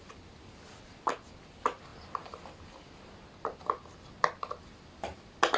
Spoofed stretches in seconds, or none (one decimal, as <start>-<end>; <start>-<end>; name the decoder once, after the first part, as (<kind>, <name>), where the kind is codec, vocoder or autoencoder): none

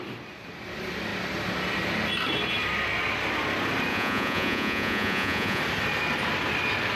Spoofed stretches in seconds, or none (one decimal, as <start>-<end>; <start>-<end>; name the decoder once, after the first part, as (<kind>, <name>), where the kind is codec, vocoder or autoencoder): 3.9-5.6 (vocoder, Vocos)

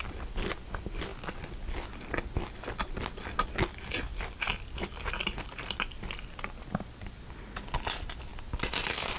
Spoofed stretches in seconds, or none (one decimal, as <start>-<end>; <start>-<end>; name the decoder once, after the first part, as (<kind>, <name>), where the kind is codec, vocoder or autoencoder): none